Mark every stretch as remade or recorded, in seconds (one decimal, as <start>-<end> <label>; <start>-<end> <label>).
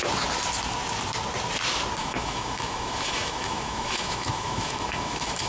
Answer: 0.0-2.0 recorded; 2.0-5.5 remade